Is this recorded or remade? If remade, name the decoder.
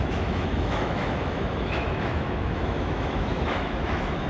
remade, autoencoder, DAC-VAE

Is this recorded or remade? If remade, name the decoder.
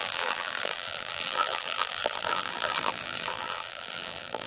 remade, vocoder, BigVGAN v2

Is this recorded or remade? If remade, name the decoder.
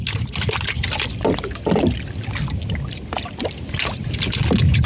recorded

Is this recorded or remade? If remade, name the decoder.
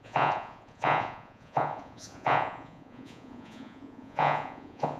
remade, vocoder, Vocos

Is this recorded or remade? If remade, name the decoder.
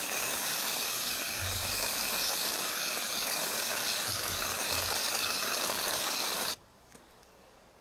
remade, codec, DAC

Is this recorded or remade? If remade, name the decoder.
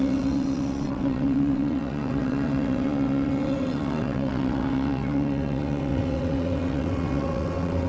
remade, vocoder, WaveNeXt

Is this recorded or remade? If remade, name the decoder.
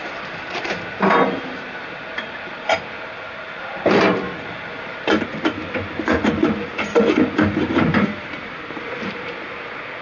recorded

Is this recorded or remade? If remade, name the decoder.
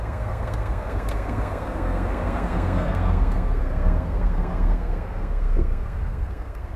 remade, codec, SNAC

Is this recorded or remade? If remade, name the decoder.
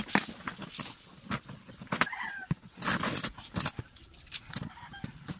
recorded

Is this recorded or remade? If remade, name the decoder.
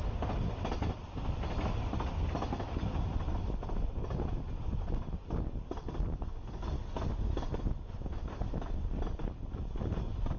recorded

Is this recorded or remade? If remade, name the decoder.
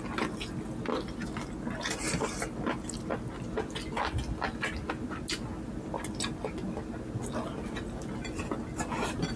recorded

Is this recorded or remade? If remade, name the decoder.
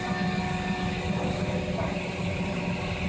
recorded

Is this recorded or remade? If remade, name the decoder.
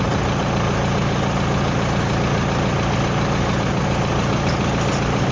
recorded